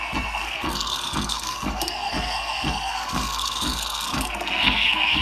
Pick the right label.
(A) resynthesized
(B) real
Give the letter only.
A